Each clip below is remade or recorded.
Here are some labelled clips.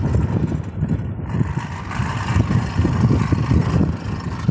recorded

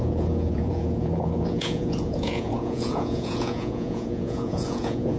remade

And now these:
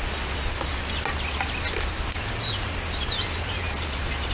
recorded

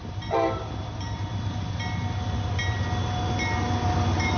recorded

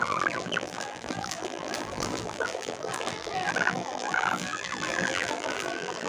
remade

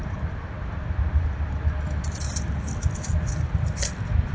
recorded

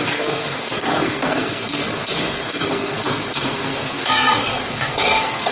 remade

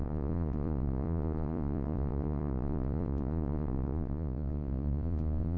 remade